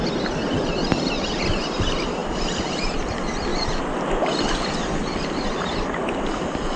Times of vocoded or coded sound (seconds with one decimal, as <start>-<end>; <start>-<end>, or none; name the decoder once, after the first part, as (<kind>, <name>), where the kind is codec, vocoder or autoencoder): none